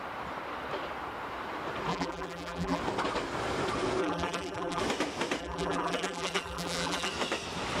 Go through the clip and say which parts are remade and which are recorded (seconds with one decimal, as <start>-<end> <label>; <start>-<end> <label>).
0.0-1.9 recorded; 1.9-2.8 remade; 2.8-4.0 recorded; 4.0-4.8 remade; 4.8-5.4 recorded; 5.4-7.1 remade; 7.1-7.8 recorded